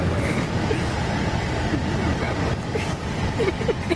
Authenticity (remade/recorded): recorded